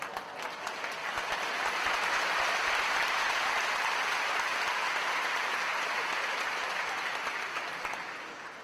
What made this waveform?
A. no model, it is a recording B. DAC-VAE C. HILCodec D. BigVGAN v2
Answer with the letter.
A